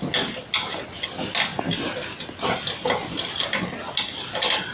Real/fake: real